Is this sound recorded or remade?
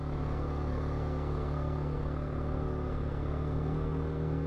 remade